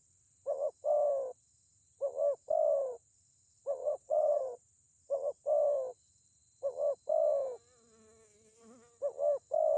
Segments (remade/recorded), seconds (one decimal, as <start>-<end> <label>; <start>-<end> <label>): 0.0-3.8 recorded; 3.8-4.4 remade; 4.4-9.8 recorded